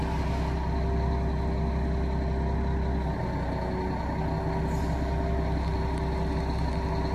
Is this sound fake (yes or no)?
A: no